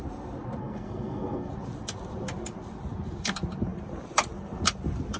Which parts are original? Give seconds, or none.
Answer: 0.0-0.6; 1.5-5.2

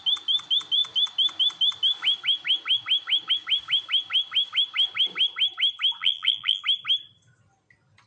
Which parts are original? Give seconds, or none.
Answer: 0.0-6.0; 6.6-8.1